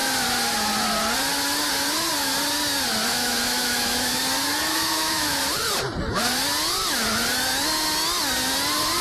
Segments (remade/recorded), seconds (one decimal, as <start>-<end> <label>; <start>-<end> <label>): 0.0-3.1 recorded; 3.1-4.2 remade; 4.2-4.7 recorded; 4.7-5.4 remade; 5.4-9.0 recorded